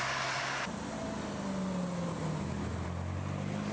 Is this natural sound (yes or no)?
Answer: yes